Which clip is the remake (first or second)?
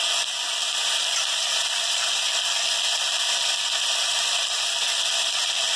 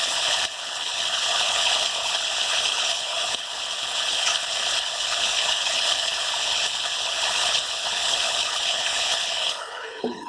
second